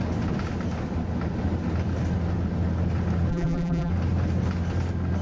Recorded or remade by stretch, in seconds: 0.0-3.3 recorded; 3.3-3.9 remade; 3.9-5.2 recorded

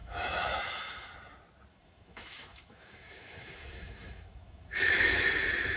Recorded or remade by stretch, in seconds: 0.0-1.1 remade; 1.1-1.7 recorded; 1.7-5.2 remade; 5.2-5.8 recorded

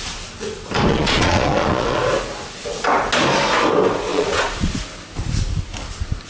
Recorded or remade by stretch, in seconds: 0.0-0.9 recorded; 0.9-2.0 remade; 2.0-4.1 recorded; 4.1-4.7 remade; 4.7-6.3 recorded

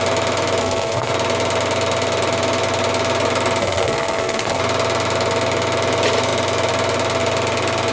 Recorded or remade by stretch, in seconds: 0.0-0.6 recorded; 0.6-1.1 remade; 1.1-3.6 recorded; 3.6-4.6 remade; 4.6-7.9 recorded

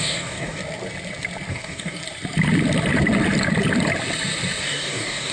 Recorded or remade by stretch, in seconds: 0.0-0.6 remade; 0.6-1.5 recorded; 1.5-2.0 remade; 2.0-4.6 recorded; 4.6-5.3 remade